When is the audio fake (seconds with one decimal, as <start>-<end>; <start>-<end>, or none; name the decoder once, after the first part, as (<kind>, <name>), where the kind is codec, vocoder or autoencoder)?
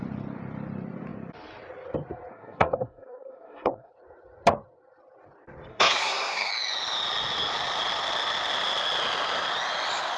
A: 2.3-3.9 (codec, SNAC); 5.7-6.5